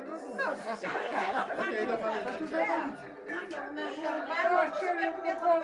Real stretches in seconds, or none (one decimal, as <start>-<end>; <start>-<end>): 0.0-0.6; 1.6-5.6